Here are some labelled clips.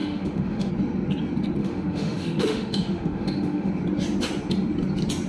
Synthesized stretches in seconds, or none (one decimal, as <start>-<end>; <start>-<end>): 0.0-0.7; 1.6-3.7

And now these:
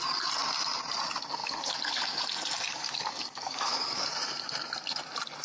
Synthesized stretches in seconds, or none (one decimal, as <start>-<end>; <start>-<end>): 1.4-2.0; 2.7-4.1

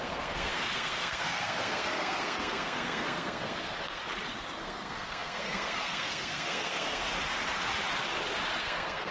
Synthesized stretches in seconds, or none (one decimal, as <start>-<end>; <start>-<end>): 0.0-4.0; 4.6-7.1; 8.6-9.1

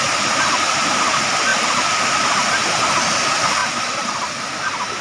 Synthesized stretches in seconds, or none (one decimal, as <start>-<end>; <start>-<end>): none